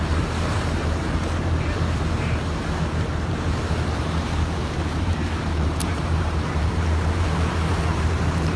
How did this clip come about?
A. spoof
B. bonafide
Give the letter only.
A